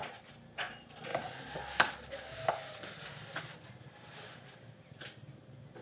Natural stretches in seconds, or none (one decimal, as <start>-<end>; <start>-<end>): 0.0-5.8